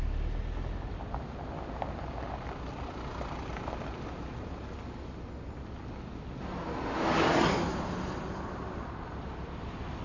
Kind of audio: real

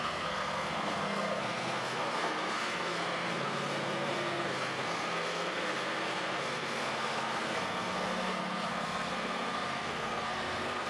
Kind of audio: fake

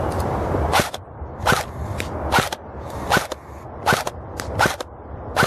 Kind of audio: real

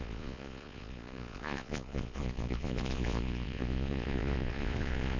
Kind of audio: fake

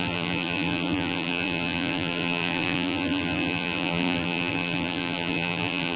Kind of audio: fake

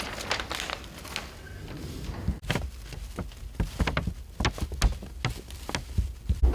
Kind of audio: real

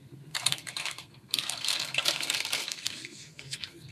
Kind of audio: fake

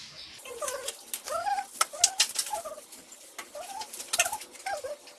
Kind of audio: real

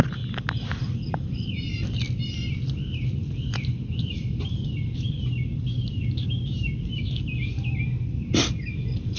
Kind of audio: real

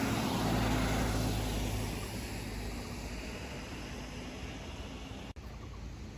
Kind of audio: real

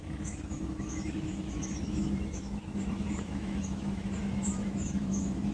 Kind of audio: fake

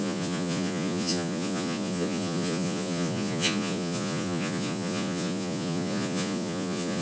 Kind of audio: fake